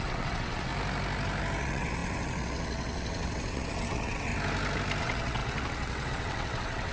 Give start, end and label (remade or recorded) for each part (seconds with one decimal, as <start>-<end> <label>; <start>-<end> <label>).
0.0-0.7 remade; 0.7-1.6 recorded; 1.6-4.3 remade; 4.3-5.0 recorded; 5.0-6.9 remade